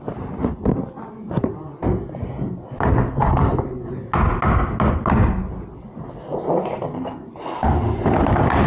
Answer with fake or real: real